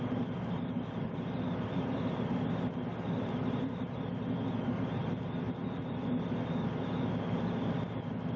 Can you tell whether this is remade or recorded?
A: recorded